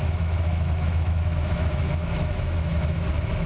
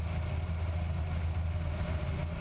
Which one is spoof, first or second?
first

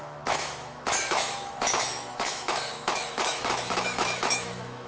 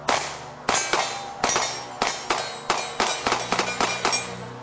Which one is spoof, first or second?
first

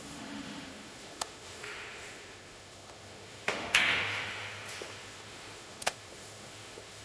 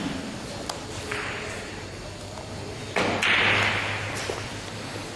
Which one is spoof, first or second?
first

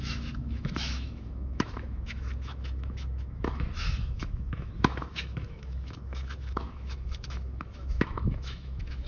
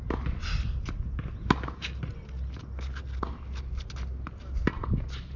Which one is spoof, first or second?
first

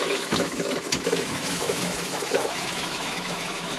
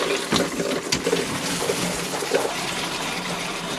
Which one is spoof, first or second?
first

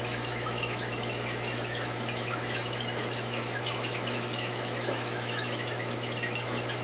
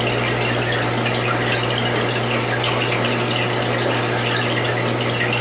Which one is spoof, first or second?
first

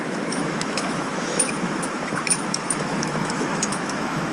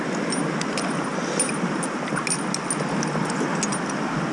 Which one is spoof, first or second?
first